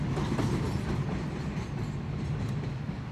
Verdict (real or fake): real